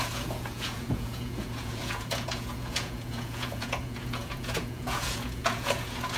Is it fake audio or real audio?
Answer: fake